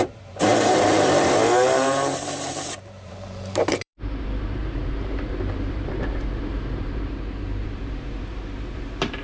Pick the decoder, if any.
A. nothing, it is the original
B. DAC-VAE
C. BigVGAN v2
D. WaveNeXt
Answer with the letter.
C